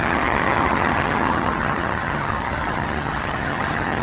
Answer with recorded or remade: remade